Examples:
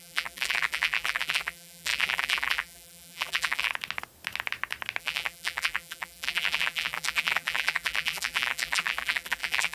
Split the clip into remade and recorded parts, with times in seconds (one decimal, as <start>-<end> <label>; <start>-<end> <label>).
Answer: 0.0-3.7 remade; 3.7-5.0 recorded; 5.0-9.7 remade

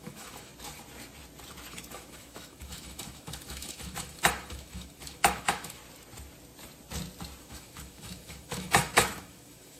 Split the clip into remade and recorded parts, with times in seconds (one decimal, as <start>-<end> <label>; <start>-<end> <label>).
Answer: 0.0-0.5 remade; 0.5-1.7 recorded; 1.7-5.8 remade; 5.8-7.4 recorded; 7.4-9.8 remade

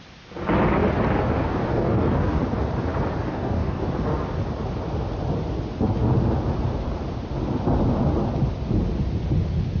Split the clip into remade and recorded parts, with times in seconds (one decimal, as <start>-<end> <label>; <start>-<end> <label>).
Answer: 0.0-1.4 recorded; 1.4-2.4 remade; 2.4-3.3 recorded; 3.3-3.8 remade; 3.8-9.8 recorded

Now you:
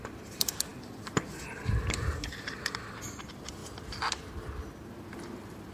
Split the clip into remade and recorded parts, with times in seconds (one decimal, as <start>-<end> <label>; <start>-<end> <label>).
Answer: 0.0-5.7 recorded